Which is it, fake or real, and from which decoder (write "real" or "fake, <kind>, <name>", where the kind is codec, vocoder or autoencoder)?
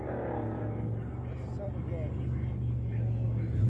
real